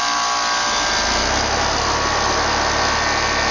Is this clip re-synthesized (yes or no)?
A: no